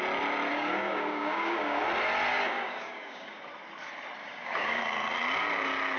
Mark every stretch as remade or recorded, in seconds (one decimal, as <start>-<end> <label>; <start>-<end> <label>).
0.0-0.5 recorded; 0.5-1.8 remade; 1.8-2.3 recorded; 2.3-3.4 remade; 3.4-4.2 recorded; 4.2-4.8 remade; 4.8-6.0 recorded